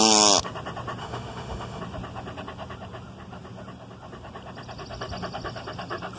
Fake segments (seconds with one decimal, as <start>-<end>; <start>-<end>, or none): 1.0-1.8